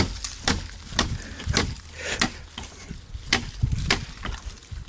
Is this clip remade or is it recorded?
recorded